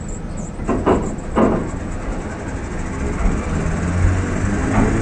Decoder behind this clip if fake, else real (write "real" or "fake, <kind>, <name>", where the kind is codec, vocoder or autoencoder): real